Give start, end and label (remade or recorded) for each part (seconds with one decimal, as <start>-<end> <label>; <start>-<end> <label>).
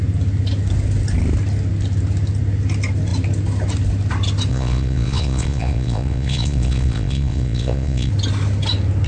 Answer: 0.0-4.5 recorded; 4.5-8.1 remade; 8.1-9.1 recorded